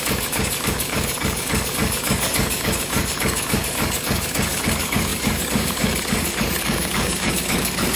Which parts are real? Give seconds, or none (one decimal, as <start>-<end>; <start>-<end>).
none